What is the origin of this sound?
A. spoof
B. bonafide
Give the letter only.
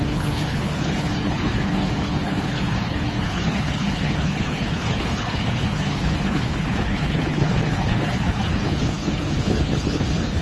A